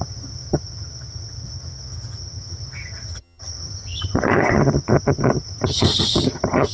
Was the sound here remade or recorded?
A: remade